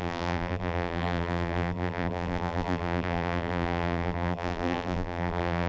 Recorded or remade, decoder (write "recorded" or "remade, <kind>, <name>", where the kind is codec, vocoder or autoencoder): remade, vocoder, BigVGAN v2